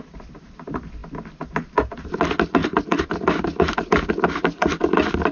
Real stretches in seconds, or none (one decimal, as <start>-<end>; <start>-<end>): 0.0-5.3